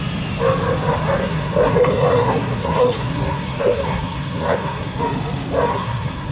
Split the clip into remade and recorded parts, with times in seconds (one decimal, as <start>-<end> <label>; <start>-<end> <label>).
0.0-1.2 recorded; 1.2-5.0 remade; 5.0-5.7 recorded; 5.7-6.3 remade